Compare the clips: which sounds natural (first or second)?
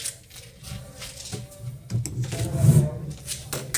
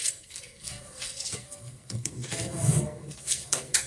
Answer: first